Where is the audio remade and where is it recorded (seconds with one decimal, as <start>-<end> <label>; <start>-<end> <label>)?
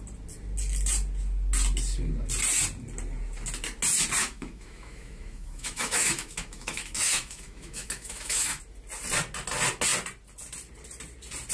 0.0-4.2 recorded; 4.2-8.6 remade; 8.6-11.5 recorded